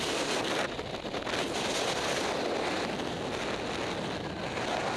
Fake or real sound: real